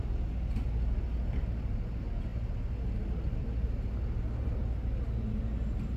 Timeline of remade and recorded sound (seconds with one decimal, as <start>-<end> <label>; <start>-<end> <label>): 0.0-6.0 recorded